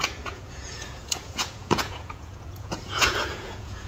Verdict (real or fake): fake